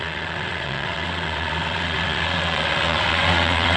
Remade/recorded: remade